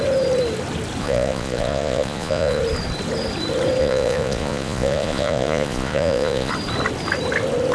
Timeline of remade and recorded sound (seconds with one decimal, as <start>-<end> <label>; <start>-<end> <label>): 0.0-1.0 recorded; 1.0-2.6 remade; 2.6-3.8 recorded; 3.8-6.5 remade; 6.5-7.7 recorded